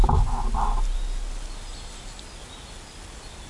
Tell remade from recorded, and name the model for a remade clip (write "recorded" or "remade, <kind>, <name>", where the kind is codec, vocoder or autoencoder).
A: recorded